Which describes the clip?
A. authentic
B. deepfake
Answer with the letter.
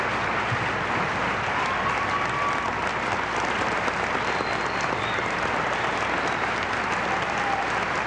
A